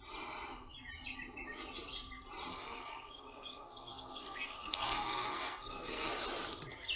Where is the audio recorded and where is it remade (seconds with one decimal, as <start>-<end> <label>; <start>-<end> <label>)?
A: 0.0-2.5 recorded; 2.5-6.1 remade; 6.1-7.0 recorded